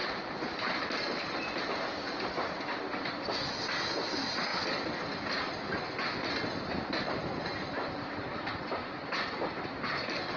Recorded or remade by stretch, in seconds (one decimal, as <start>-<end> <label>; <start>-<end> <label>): 0.0-1.3 remade; 1.3-8.5 recorded; 8.5-9.0 remade; 9.0-10.4 recorded